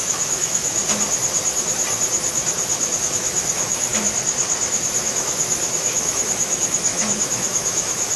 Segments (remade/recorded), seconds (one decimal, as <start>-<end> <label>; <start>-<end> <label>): 0.0-0.8 remade; 0.8-3.0 recorded; 3.0-3.9 remade; 3.9-5.0 recorded; 5.0-8.2 remade